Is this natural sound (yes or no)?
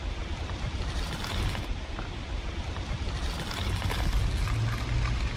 yes